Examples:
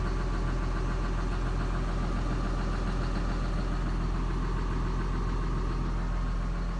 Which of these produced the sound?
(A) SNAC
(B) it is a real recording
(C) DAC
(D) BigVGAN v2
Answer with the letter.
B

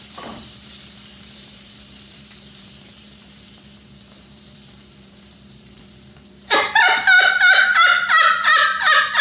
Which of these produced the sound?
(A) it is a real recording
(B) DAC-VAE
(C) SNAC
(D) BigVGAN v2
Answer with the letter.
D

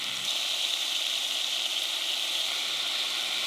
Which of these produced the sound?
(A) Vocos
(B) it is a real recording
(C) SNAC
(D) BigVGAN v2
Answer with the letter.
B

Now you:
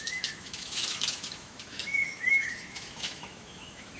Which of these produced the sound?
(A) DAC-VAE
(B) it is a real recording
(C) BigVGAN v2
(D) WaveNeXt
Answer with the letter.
A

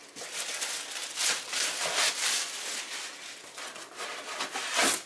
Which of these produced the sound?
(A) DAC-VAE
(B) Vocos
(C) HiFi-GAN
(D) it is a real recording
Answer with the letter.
D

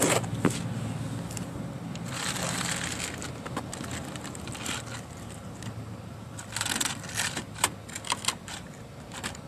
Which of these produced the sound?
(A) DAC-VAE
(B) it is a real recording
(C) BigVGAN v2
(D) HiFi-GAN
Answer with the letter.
B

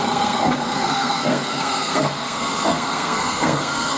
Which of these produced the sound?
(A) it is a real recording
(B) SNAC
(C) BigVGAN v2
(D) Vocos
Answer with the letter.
B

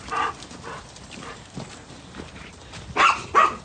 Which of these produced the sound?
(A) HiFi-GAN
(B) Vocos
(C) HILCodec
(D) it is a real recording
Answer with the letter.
D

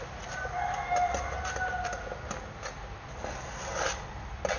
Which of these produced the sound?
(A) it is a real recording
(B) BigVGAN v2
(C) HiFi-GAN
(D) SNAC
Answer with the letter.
A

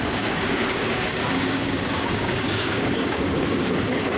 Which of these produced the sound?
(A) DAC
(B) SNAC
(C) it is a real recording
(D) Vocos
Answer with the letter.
A